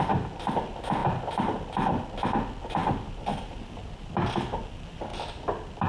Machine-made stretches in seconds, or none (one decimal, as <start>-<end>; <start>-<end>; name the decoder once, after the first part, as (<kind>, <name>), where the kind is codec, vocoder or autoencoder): none